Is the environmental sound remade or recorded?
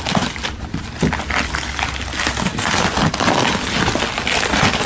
recorded